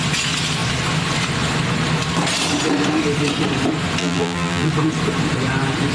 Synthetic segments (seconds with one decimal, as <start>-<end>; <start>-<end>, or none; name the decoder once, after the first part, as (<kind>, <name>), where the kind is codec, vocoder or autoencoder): 4.0-4.7 (vocoder, BigVGAN v2)